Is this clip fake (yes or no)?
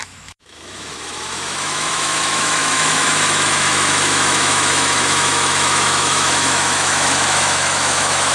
yes